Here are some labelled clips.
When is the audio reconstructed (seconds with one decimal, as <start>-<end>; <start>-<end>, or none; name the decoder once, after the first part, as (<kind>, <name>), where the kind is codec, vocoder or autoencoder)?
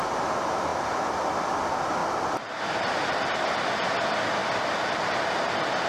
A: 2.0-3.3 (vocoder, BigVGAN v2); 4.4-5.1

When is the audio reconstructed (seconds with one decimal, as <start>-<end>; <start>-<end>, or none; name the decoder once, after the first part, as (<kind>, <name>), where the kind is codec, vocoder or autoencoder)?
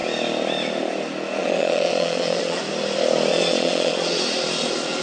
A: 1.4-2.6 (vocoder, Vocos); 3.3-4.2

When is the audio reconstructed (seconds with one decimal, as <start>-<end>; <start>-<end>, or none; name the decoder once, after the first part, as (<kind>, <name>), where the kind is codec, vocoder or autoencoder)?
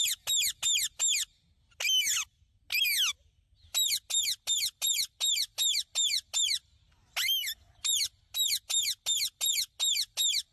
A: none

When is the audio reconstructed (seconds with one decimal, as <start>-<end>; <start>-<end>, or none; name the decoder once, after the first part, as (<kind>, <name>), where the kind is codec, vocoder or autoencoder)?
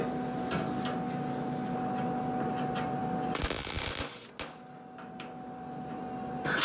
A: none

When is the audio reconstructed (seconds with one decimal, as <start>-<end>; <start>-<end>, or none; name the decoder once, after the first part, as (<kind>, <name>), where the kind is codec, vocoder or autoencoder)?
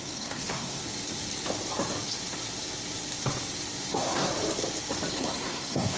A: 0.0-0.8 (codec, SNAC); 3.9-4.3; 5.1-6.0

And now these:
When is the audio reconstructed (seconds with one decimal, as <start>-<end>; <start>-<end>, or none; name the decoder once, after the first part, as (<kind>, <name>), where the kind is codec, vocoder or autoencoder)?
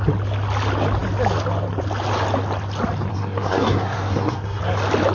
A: 3.1-4.6 (codec, SNAC)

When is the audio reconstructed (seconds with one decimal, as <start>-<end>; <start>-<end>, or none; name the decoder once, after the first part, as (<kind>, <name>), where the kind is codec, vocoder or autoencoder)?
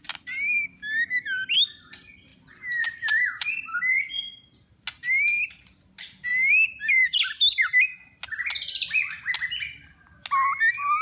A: 2.3-3.8 (vocoder, BigVGAN v2); 6.3-7.2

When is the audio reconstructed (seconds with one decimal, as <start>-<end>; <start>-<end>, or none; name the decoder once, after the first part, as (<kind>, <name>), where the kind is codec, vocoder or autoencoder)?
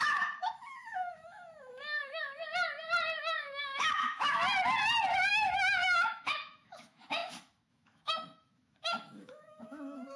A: 0.0-2.4 (autoencoder, DAC-VAE); 3.2-4.4; 5.3-10.2